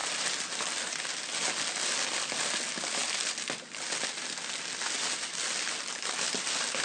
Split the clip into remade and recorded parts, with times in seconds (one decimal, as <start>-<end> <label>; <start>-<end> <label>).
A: 0.0-6.8 recorded